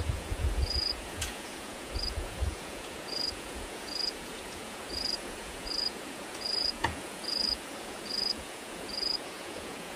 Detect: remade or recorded remade